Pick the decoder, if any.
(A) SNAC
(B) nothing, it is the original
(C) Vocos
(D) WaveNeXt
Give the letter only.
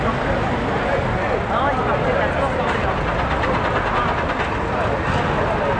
B